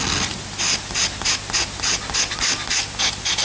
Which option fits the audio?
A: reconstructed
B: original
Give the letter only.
B